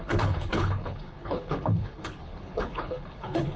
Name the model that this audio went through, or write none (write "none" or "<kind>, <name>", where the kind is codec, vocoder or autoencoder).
codec, HILCodec